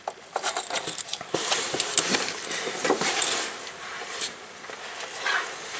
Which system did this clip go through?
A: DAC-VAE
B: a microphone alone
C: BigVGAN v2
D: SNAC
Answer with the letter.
B